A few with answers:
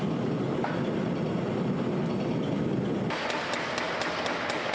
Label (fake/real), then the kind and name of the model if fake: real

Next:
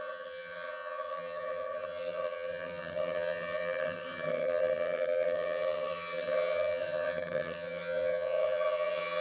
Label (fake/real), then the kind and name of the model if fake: fake, vocoder, HiFi-GAN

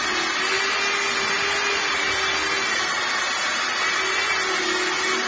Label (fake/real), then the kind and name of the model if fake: real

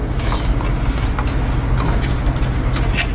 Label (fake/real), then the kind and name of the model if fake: real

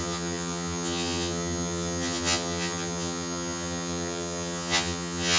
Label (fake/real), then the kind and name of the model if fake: fake, vocoder, HiFi-GAN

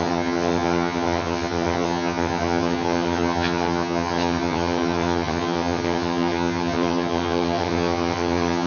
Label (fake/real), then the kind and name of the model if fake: fake, vocoder, HiFi-GAN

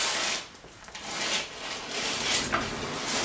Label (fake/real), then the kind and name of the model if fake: real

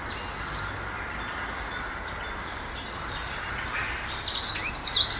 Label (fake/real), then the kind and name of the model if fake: real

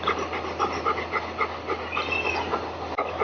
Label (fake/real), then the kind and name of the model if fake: real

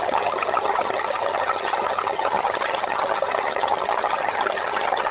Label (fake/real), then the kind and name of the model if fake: fake, vocoder, HiFi-GAN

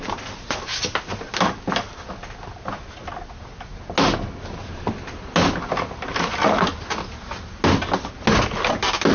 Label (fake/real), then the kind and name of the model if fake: real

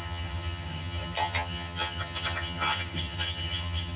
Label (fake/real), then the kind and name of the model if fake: fake, vocoder, HiFi-GAN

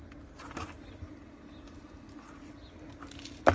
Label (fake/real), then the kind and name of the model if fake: real